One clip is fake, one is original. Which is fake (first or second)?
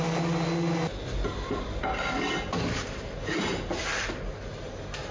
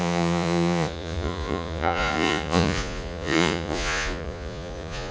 second